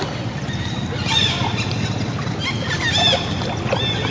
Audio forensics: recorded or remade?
recorded